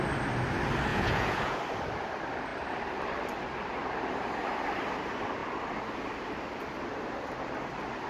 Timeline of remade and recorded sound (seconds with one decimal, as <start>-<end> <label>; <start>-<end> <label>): 0.0-0.9 recorded; 0.9-1.6 remade; 1.6-8.1 recorded